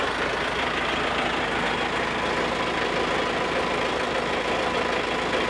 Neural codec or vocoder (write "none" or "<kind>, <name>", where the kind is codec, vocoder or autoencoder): none